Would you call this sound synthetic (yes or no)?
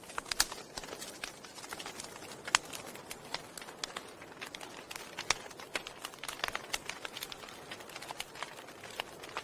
no